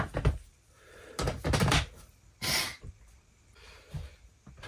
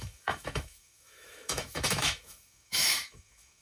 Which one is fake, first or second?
second